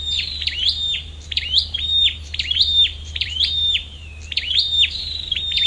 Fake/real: fake